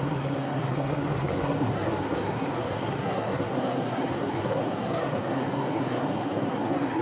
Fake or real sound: fake